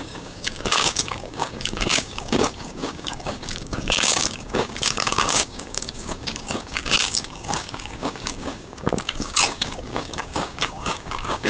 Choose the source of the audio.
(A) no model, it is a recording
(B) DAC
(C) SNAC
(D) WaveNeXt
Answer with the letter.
B